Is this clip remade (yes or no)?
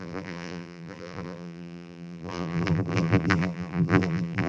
yes